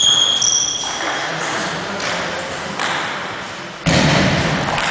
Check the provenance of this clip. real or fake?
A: real